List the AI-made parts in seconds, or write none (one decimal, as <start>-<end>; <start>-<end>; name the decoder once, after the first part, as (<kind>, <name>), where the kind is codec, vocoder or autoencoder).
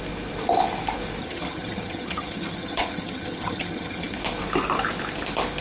1.2-4.2 (vocoder, HiFi-GAN)